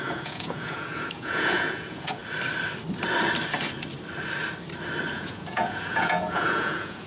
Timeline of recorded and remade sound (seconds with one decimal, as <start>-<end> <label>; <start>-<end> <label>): 0.0-2.2 remade; 2.2-5.1 recorded; 5.1-7.1 remade